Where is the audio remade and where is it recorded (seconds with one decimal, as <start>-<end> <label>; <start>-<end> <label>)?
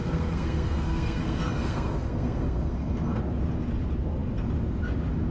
0.0-3.2 remade; 3.2-5.3 recorded